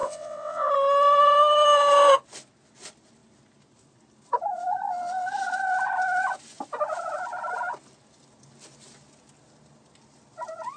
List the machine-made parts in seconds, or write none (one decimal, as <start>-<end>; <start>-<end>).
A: 0.0-0.7